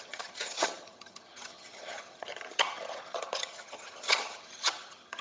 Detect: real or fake fake